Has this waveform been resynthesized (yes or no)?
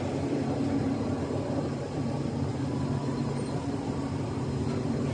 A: yes